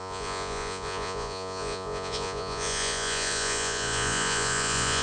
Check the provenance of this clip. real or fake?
fake